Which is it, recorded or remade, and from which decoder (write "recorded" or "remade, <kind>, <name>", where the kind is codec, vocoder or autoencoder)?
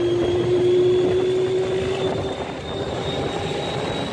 recorded